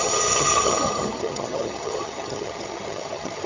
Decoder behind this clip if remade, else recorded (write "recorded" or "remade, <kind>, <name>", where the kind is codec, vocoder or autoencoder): remade, vocoder, HiFi-GAN